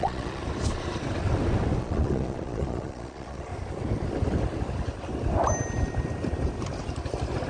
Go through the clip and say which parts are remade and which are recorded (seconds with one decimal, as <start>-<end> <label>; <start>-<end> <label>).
0.0-0.4 remade; 0.4-1.8 recorded; 1.8-3.5 remade; 3.5-7.5 recorded